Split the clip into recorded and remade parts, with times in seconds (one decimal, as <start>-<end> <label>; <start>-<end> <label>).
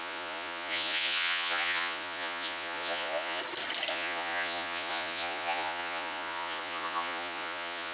0.0-3.4 remade; 3.4-3.9 recorded; 3.9-7.9 remade